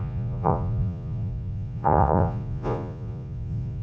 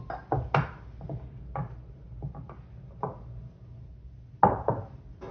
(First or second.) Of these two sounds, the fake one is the first